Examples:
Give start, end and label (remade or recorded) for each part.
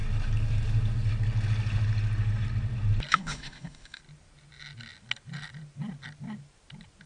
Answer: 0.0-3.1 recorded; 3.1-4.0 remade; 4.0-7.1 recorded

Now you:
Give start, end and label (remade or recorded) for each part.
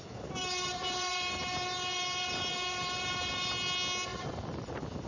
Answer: 0.0-0.4 recorded; 0.4-3.5 remade; 3.5-4.1 recorded; 4.1-5.1 remade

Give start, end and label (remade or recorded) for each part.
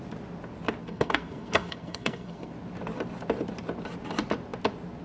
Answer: 0.0-0.8 recorded; 0.8-2.5 remade; 2.5-5.0 recorded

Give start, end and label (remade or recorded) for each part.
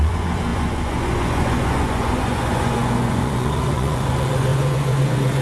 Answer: 0.0-5.4 remade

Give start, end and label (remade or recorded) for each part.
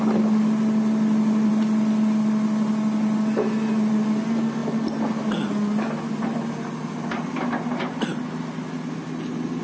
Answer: 0.0-9.6 recorded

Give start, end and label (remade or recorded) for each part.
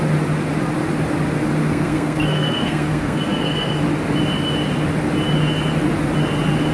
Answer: 0.0-1.6 recorded; 1.6-3.8 remade; 3.8-6.7 recorded